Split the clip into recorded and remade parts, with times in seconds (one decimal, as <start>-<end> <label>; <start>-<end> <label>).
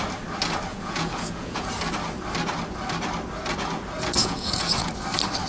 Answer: 0.0-0.7 recorded; 0.7-1.7 remade; 1.7-4.2 recorded; 4.2-4.9 remade; 4.9-5.5 recorded